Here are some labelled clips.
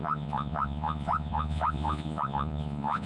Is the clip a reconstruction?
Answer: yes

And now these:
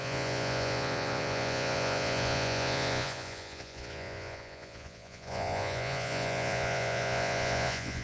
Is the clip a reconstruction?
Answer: yes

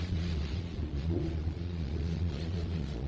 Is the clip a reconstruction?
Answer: yes